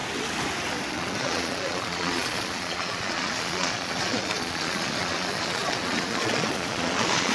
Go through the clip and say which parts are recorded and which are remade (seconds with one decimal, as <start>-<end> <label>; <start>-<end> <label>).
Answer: 0.0-0.9 recorded; 0.9-7.3 remade

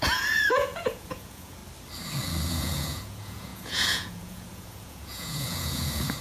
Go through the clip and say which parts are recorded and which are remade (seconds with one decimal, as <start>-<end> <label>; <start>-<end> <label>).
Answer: 0.0-1.6 remade; 1.6-2.5 recorded; 2.5-6.2 remade

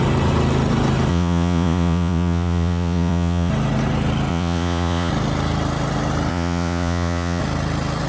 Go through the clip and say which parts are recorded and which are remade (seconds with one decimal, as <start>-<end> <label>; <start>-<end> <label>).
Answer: 0.0-1.1 recorded; 1.1-3.5 remade; 3.5-4.3 recorded; 4.3-5.1 remade; 5.1-6.3 recorded; 6.3-7.4 remade; 7.4-8.1 recorded

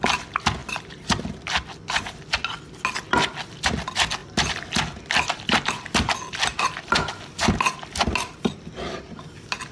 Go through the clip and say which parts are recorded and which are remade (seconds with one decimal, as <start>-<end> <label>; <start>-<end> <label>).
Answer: 0.0-9.7 recorded

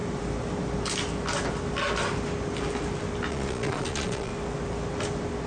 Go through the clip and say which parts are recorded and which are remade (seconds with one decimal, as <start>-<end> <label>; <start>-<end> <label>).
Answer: 0.0-3.3 recorded; 3.3-4.3 remade; 4.3-5.5 recorded

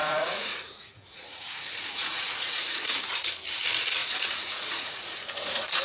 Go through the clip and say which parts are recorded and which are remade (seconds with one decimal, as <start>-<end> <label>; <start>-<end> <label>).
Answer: 0.0-3.3 remade; 3.3-4.0 recorded; 4.0-5.8 remade

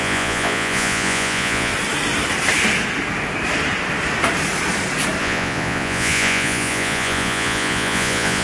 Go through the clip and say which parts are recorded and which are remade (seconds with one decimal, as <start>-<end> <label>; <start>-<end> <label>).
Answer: 0.0-1.7 remade; 1.7-5.2 recorded; 5.2-8.4 remade

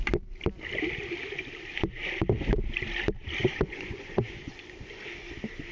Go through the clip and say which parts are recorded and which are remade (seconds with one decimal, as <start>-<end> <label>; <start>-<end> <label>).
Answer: 0.0-3.4 recorded; 3.4-5.0 remade; 5.0-5.7 recorded